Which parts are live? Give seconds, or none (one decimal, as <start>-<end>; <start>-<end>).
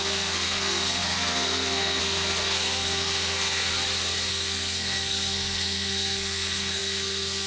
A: 3.7-4.3